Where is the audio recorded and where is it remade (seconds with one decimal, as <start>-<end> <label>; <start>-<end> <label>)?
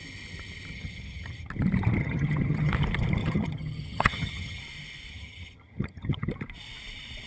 0.0-0.7 recorded; 0.7-1.5 remade; 1.5-2.0 recorded; 2.0-2.7 remade; 2.7-3.2 recorded; 3.2-4.6 remade; 4.6-5.1 recorded; 5.1-6.3 remade; 6.3-7.3 recorded